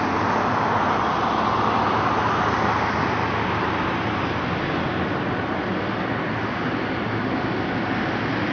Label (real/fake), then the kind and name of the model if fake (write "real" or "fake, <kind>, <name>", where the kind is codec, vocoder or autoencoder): real